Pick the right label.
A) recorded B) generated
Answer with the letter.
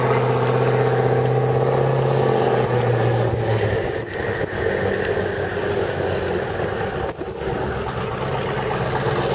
A